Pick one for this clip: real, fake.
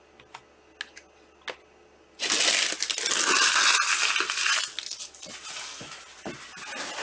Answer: real